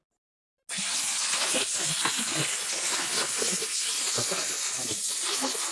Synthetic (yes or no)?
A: no